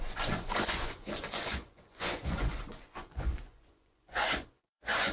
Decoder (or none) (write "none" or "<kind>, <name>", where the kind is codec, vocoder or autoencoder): vocoder, Vocos